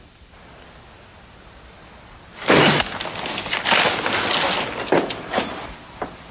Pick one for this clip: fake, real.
real